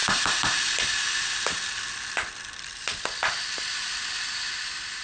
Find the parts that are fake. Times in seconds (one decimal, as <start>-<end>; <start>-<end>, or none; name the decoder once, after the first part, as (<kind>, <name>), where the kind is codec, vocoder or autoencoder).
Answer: none